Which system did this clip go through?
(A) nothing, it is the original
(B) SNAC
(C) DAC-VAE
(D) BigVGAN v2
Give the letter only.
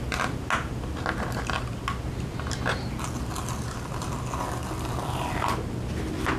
A